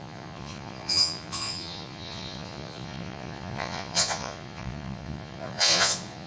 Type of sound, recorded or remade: remade